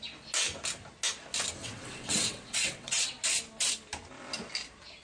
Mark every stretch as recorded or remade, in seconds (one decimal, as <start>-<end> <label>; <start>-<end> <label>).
0.0-1.6 recorded; 1.6-3.1 remade; 3.1-5.0 recorded